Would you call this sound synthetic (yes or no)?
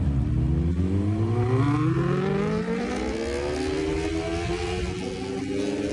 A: no